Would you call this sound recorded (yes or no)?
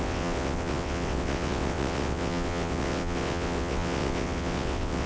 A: no